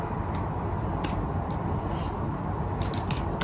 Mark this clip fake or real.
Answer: real